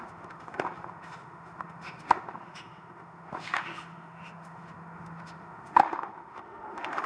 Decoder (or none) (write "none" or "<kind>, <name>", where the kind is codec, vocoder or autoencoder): autoencoder, DAC-VAE